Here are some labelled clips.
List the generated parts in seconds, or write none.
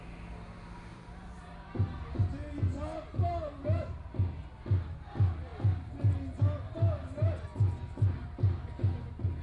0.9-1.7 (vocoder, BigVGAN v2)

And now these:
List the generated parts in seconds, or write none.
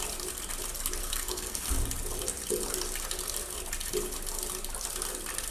1.0-1.7 (codec, SNAC)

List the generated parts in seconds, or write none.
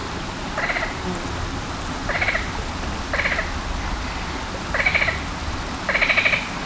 none